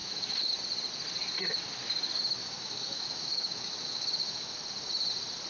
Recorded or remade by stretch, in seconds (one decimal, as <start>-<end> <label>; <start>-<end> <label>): 0.0-0.6 remade; 0.6-2.4 recorded; 2.4-4.5 remade; 4.5-5.5 recorded